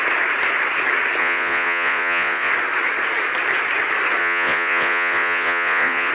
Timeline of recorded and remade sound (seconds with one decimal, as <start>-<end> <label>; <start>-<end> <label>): 0.0-1.2 recorded; 1.2-2.5 remade; 2.5-4.2 recorded; 4.2-6.1 remade